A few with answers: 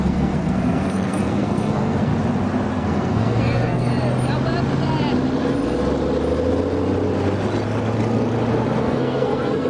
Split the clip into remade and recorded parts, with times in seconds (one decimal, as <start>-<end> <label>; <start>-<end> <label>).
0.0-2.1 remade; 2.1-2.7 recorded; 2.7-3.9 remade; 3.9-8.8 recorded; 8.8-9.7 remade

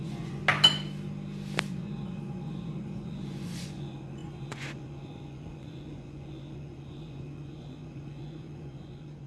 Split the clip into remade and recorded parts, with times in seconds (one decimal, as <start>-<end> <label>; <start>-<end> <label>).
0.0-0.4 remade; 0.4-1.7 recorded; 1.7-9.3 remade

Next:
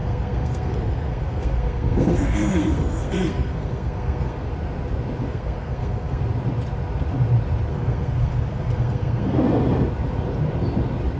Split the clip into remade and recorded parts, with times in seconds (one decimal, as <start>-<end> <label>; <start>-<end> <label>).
0.0-4.5 remade; 4.5-5.2 recorded; 5.2-6.2 remade; 6.2-7.7 recorded; 7.7-9.4 remade; 9.4-11.2 recorded

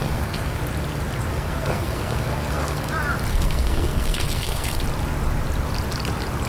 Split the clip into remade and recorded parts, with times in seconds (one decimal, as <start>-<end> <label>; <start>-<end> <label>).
0.0-0.6 remade; 0.6-1.3 recorded; 1.3-2.9 remade; 2.9-3.3 recorded; 3.3-4.8 remade; 4.8-6.5 recorded